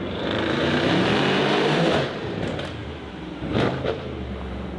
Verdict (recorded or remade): remade